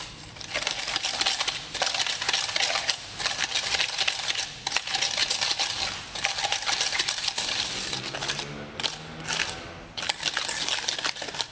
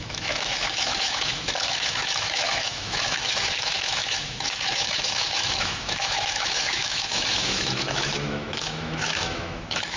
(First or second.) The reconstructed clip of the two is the second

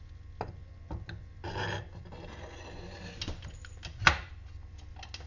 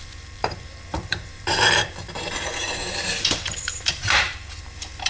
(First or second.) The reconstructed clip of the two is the second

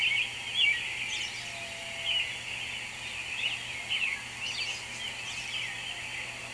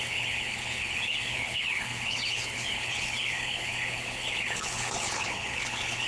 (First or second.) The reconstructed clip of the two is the second